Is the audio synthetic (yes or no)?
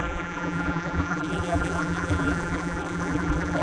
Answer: yes